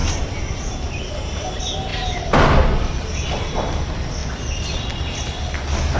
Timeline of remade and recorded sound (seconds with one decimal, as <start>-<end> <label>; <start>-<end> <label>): 0.0-1.9 recorded; 1.9-2.9 remade; 2.9-4.2 recorded; 4.2-4.9 remade; 4.9-6.0 recorded